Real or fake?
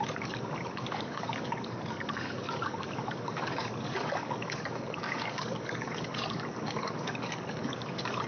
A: fake